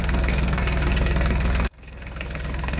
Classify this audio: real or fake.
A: fake